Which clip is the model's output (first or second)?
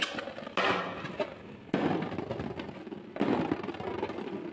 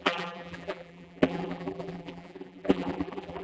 second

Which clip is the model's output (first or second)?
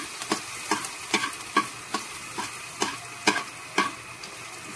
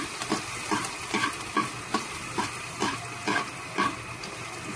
second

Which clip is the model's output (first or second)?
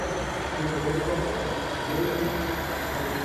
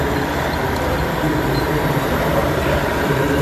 second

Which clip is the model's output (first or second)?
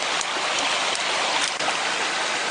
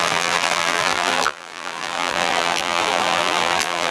second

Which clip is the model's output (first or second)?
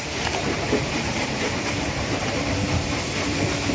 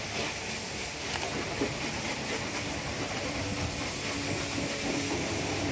first